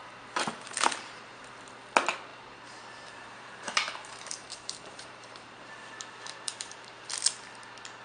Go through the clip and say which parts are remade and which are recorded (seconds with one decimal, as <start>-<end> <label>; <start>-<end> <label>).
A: 0.0-1.4 remade; 1.4-2.3 recorded; 2.3-7.1 remade; 7.1-8.0 recorded